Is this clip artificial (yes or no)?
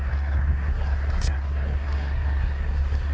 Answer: yes